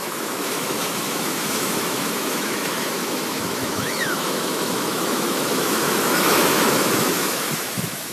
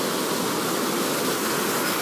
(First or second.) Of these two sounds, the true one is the second